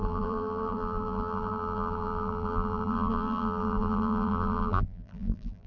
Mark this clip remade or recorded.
remade